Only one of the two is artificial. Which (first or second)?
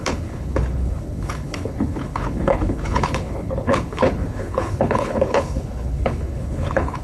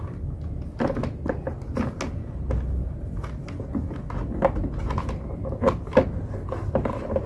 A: first